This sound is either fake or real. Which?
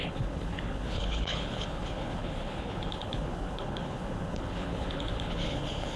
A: fake